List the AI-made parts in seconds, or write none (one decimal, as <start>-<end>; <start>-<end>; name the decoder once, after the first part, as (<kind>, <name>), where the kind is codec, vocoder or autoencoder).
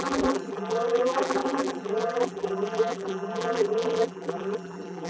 0.0-5.1 (vocoder, BigVGAN v2)